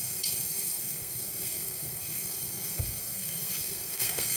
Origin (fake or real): fake